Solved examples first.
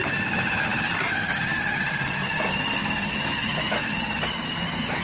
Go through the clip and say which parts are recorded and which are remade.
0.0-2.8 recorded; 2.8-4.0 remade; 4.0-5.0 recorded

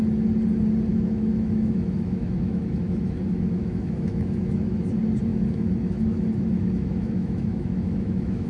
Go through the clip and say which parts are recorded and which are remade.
0.0-0.9 recorded; 0.9-4.8 remade; 4.8-5.3 recorded; 5.3-8.5 remade

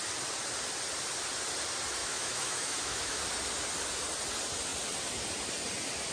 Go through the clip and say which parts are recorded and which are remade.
0.0-2.0 recorded; 2.0-3.2 remade; 3.2-6.1 recorded

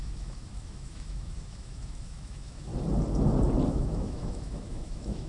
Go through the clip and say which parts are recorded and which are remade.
0.0-2.7 remade; 2.7-3.7 recorded; 3.7-5.3 remade

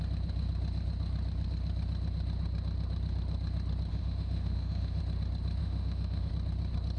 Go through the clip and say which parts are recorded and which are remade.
0.0-3.9 recorded; 3.9-5.0 remade; 5.0-5.6 recorded; 5.6-6.3 remade; 6.3-7.0 recorded

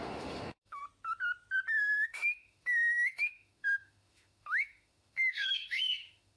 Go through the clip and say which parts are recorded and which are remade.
0.0-0.8 remade; 0.8-1.8 recorded; 1.8-6.4 remade